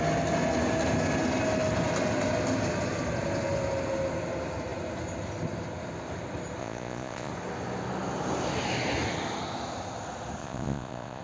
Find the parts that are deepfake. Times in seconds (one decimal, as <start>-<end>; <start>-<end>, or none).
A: 6.6-7.3; 10.4-11.2